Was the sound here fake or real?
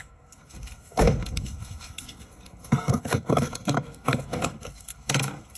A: fake